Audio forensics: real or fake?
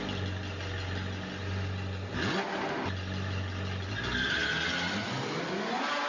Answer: real